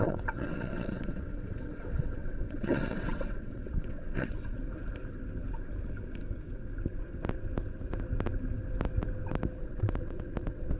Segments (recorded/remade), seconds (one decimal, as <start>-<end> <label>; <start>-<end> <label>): 0.0-4.6 remade; 4.6-9.6 recorded; 9.6-10.8 remade